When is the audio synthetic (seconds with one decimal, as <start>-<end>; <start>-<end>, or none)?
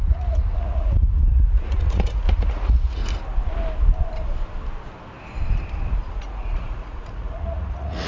0.0-3.0; 6.1-8.1